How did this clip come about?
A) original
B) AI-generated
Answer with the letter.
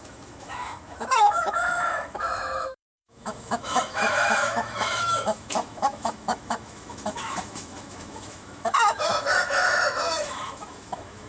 B